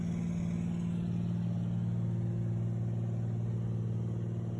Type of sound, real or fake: real